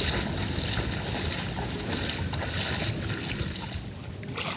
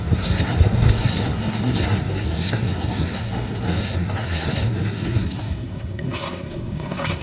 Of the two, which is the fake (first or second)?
second